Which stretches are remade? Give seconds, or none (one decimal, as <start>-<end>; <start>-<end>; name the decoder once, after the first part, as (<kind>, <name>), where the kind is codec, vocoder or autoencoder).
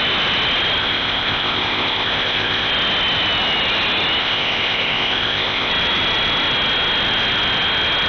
0.8-2.7 (codec, ZipCodec); 4.2-5.7